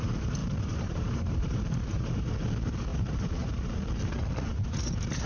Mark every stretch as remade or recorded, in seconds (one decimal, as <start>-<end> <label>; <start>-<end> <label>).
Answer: 0.0-0.4 recorded; 0.4-2.3 remade; 2.3-2.9 recorded; 2.9-3.9 remade; 3.9-4.5 recorded; 4.5-5.3 remade